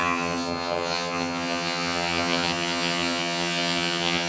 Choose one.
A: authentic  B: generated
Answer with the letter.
B